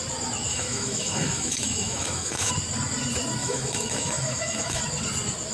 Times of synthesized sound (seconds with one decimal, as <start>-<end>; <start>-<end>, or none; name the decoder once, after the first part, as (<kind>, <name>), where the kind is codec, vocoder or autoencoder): 0.5-2.5 (autoencoder, DAC-VAE); 3.4-4.8